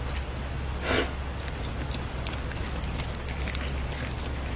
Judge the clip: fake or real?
real